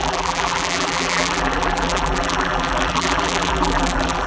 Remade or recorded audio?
remade